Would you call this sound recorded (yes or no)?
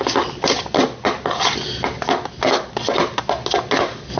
yes